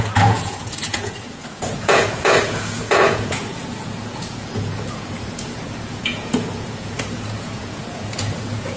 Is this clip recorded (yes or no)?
no